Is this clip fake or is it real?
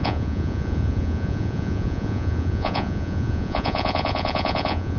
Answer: fake